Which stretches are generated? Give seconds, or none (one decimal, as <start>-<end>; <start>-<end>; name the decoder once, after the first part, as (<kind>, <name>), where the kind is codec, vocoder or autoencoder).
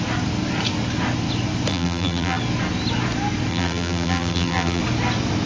1.7-2.4 (vocoder, BigVGAN v2); 3.5-4.8